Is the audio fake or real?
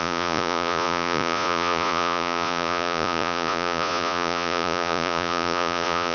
fake